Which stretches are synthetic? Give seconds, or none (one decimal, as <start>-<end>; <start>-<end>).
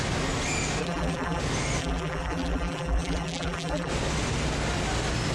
0.8-1.4; 1.8-3.9